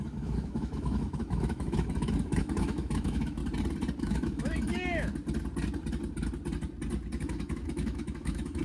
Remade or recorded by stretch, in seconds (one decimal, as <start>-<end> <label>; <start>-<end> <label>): 0.0-3.4 remade; 3.4-4.0 recorded; 4.0-5.1 remade; 5.1-7.2 recorded; 7.2-8.6 remade